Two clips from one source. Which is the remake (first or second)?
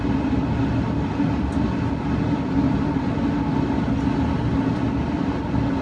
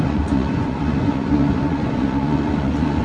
second